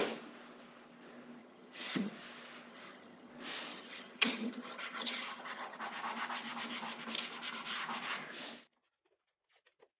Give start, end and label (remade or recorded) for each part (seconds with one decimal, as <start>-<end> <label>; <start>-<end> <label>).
0.0-1.4 recorded; 1.4-2.1 remade; 2.1-2.7 recorded; 2.7-3.3 remade; 3.3-3.7 recorded; 3.7-5.8 remade; 5.8-10.0 recorded